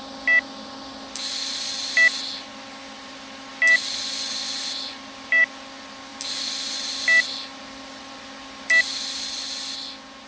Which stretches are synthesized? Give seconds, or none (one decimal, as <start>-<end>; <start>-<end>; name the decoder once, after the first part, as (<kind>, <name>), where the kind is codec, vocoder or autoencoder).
none